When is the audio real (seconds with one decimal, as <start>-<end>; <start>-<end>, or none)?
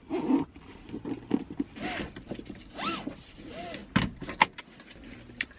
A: 0.0-5.6